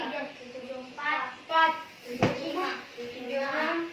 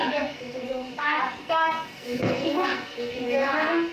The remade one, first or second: second